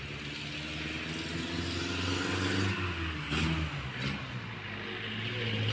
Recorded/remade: recorded